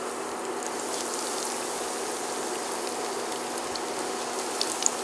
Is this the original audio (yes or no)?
yes